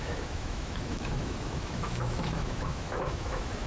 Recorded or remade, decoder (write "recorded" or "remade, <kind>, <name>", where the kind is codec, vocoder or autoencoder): remade, autoencoder, DAC-VAE